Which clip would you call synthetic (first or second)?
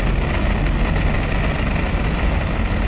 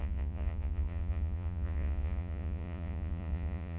second